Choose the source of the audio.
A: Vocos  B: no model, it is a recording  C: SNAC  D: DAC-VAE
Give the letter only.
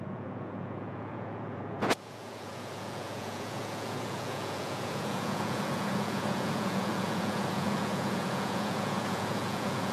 A